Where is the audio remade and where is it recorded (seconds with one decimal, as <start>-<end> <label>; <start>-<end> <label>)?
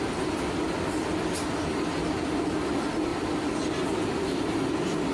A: 0.0-5.1 recorded